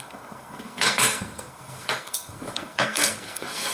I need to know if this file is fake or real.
fake